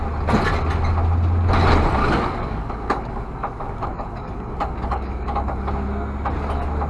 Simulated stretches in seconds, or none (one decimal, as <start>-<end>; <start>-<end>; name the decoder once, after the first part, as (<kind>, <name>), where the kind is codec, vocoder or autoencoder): 2.0-5.7 (codec, DAC)